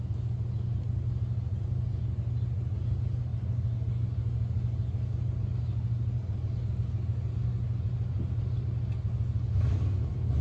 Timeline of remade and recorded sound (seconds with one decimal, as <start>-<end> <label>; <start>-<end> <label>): 0.0-10.4 recorded